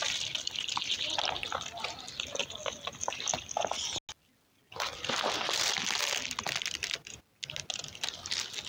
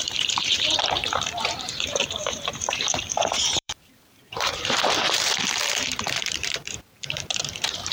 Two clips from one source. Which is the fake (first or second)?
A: second